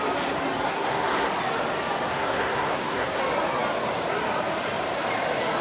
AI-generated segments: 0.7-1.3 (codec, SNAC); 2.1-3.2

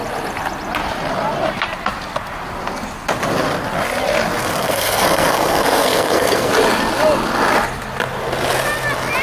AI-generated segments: 4.4-6.5 (codec, SNAC)

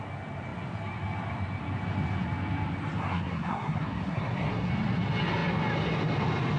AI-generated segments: 3.0-4.7 (codec, SNAC)

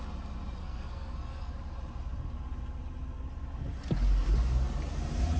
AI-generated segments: 0.6-1.5 (codec, SNAC)

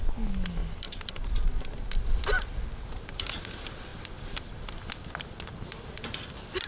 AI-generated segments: none